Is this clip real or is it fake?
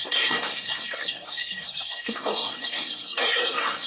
fake